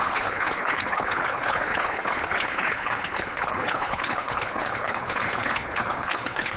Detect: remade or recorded remade